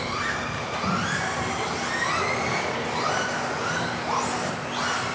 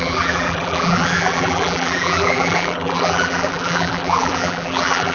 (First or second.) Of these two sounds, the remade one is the second